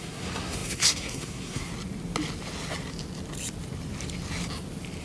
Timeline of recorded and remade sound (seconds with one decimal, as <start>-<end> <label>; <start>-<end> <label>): 0.0-1.7 remade; 1.7-5.0 recorded